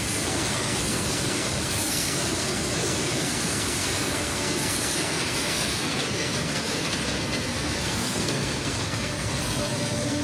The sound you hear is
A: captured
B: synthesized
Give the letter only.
B